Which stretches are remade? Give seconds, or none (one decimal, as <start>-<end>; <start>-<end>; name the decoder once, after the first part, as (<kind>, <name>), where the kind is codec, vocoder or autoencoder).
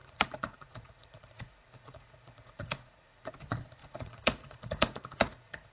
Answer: 0.0-3.3 (vocoder, Vocos); 3.8-5.7